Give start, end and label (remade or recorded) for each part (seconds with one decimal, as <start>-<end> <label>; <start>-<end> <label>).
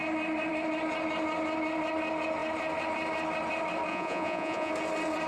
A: 0.0-3.9 recorded; 3.9-4.7 remade; 4.7-5.3 recorded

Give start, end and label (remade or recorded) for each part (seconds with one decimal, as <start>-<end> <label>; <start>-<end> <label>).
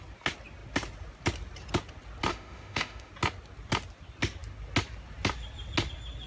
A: 0.0-2.3 recorded; 2.3-3.1 remade; 3.1-6.3 recorded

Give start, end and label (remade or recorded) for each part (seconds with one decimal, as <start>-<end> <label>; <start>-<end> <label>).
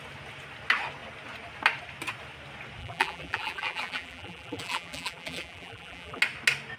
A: 0.0-2.8 recorded; 2.8-6.2 remade; 6.2-6.8 recorded